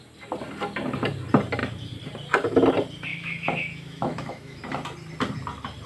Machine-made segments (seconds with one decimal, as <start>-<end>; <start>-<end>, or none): 3.1-4.6